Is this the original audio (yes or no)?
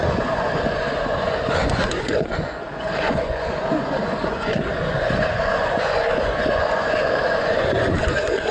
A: no